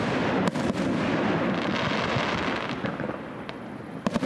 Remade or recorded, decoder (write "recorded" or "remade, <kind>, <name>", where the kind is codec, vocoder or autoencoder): recorded